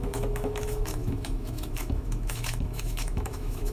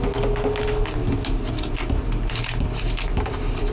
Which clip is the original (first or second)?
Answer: second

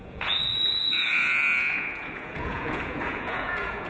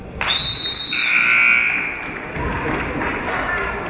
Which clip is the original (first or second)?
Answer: second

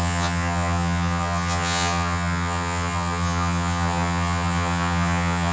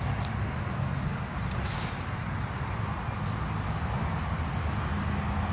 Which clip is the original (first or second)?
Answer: second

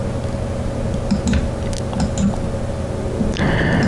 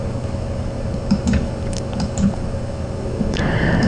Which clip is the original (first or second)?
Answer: first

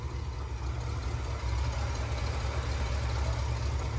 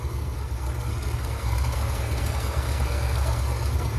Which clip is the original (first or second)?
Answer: first